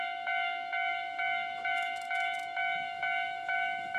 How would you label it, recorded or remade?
remade